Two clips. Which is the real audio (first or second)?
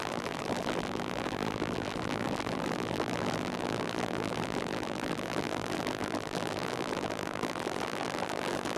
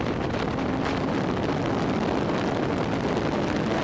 second